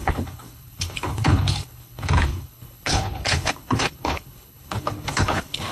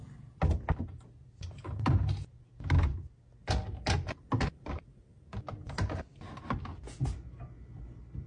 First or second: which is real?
second